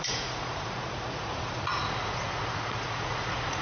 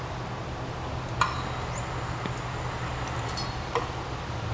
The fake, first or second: first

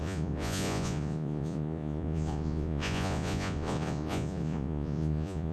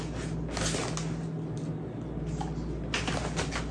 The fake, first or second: first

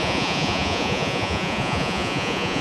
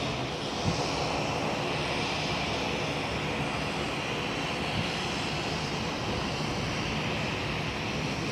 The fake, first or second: first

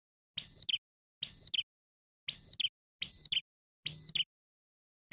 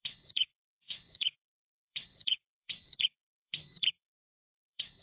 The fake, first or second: second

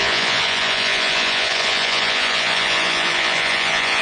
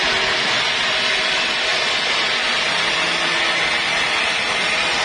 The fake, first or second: first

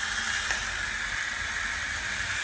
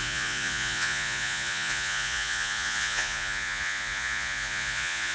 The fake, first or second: second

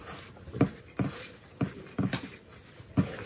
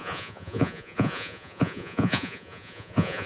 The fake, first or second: second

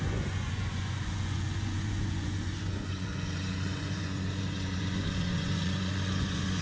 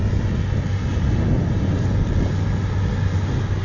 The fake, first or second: first